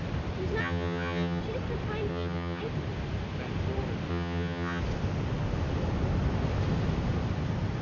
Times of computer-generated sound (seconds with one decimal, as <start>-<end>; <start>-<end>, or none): 0.6-1.4; 2.1-2.6; 4.1-4.8